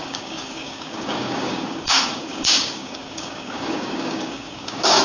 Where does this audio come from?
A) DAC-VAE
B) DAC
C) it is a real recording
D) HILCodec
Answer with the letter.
B